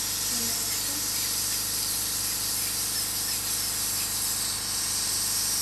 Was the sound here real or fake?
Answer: real